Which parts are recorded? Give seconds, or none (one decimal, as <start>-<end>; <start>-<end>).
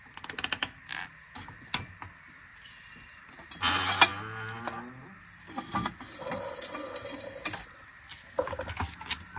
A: 0.0-2.5; 3.3-9.4